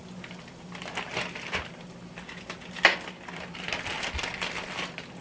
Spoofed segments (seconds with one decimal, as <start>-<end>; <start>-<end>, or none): none